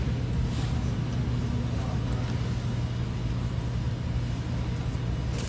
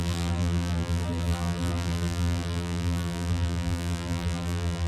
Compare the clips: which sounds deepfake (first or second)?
second